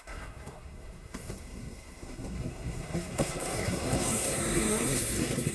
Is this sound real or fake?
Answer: fake